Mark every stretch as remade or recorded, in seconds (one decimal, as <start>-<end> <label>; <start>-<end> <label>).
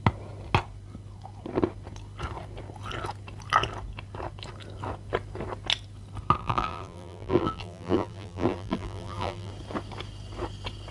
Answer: 0.0-6.4 recorded; 6.4-9.5 remade; 9.5-10.9 recorded